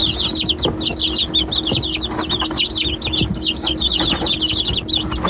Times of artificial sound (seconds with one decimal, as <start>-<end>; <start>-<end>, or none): none